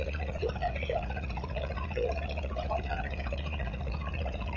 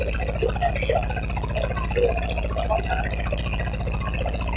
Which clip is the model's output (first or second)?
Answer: first